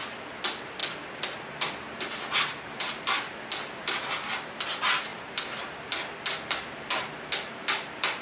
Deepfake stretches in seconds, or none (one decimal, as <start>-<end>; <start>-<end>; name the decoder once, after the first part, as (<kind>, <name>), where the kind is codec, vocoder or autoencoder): none